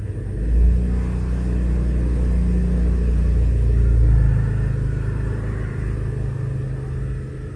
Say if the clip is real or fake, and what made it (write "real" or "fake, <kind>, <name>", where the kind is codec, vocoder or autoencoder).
real